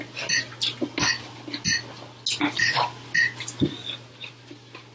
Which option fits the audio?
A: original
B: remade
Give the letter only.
A